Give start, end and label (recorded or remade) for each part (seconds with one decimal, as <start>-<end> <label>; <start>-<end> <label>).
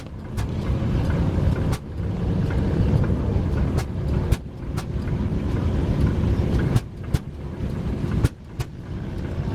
0.0-5.3 recorded; 5.3-8.6 remade; 8.6-9.5 recorded